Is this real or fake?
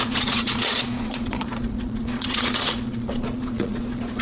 fake